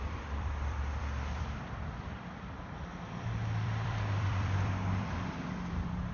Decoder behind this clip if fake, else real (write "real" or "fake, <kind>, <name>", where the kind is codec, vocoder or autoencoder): fake, vocoder, BigVGAN v2